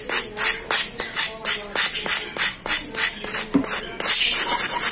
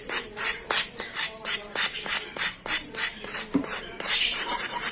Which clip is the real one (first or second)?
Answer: first